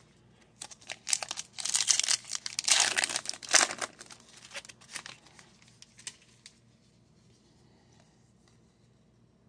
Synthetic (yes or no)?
no